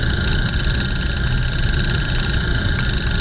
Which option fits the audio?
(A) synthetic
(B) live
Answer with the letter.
B